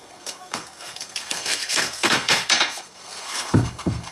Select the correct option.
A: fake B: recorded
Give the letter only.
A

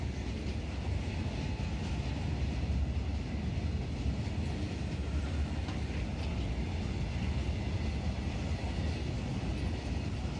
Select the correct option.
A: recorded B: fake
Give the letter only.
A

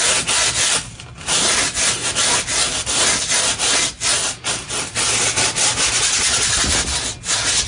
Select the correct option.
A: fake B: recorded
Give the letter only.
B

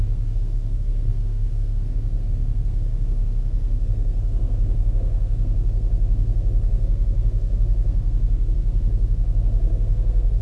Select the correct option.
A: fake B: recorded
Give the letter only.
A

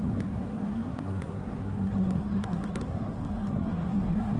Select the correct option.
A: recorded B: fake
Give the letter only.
B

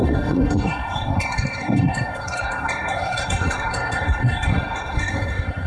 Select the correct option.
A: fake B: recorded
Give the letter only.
A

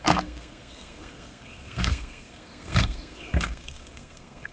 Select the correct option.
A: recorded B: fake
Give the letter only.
B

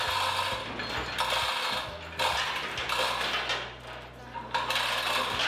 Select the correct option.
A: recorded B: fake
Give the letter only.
A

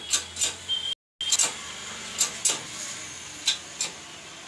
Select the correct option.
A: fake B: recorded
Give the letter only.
B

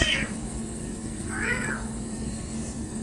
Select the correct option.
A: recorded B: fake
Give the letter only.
B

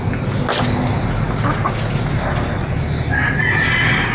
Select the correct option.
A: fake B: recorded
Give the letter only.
B